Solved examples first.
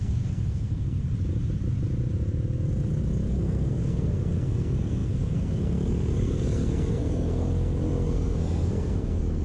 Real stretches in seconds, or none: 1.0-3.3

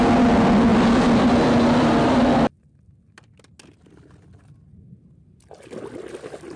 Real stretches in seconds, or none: 0.0-6.6